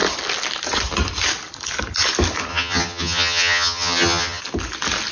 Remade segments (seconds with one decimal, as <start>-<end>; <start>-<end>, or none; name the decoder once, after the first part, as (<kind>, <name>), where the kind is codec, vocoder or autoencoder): 2.5-4.4 (vocoder, HiFi-GAN)